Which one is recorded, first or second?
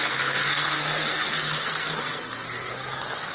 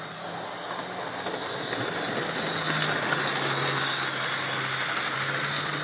second